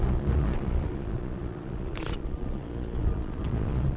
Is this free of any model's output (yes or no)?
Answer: no